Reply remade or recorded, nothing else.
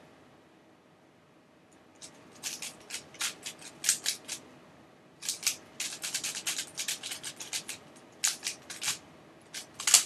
recorded